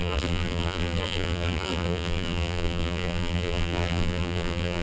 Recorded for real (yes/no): no